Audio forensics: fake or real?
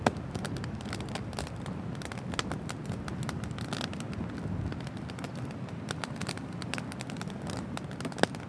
real